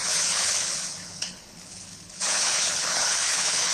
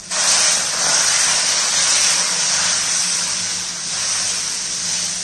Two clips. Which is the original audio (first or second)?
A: second